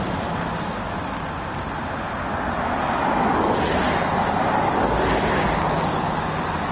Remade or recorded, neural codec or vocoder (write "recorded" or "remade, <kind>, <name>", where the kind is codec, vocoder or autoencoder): recorded